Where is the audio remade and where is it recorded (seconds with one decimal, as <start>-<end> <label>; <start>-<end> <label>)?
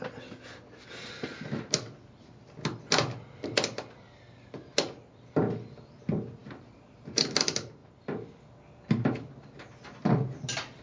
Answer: 0.0-10.8 recorded